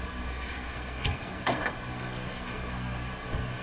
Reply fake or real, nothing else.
fake